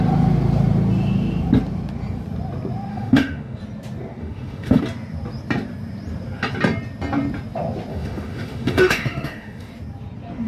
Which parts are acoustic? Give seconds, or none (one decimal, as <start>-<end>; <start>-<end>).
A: 0.0-2.9; 3.6-4.2; 4.8-7.9; 9.7-10.5